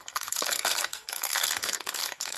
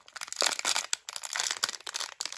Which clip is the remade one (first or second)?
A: first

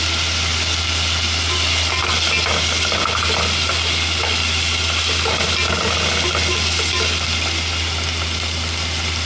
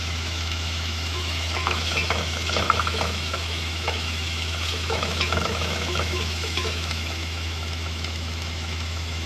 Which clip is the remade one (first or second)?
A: second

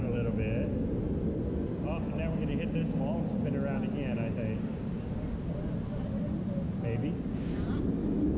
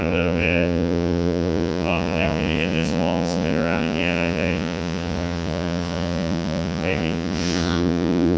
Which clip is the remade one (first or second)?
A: second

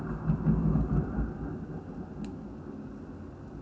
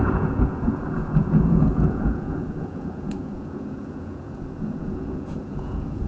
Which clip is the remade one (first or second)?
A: second